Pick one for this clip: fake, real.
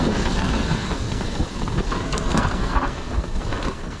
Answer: fake